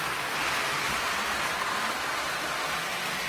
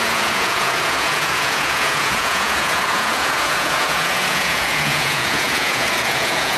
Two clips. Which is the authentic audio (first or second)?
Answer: first